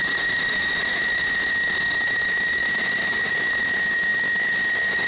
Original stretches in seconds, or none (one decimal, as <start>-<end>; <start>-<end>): 0.0-5.1